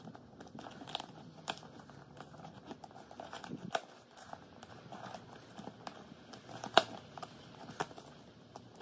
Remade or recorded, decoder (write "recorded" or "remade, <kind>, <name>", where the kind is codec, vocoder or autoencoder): recorded